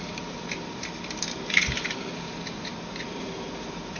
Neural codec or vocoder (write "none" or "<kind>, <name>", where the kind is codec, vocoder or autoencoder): none